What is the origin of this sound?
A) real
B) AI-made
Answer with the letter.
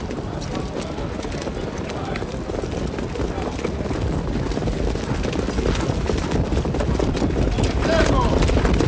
A